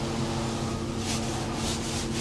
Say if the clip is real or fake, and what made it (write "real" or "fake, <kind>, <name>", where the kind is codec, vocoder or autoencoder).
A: real